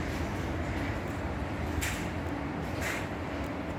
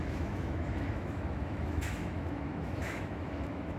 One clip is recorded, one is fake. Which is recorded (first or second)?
first